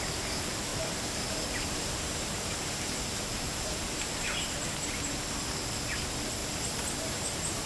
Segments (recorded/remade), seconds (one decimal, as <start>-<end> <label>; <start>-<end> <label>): 0.0-0.7 recorded; 0.7-5.3 remade; 5.3-6.4 recorded; 6.4-7.7 remade

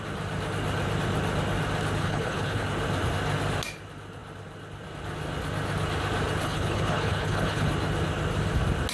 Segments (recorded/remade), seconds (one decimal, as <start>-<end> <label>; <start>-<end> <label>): 0.0-2.0 recorded; 2.0-2.6 remade; 2.6-6.4 recorded; 6.4-7.7 remade; 7.7-8.9 recorded